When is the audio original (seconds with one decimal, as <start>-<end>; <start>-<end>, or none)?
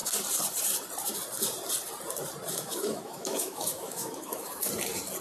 0.0-2.5; 4.6-5.2